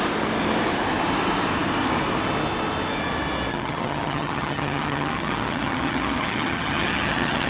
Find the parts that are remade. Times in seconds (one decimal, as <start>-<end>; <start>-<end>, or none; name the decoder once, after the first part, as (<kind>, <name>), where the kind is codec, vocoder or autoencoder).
3.5-7.5 (vocoder, HiFi-GAN)